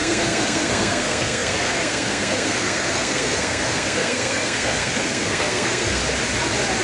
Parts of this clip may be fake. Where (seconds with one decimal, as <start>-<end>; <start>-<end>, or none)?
0.0-6.0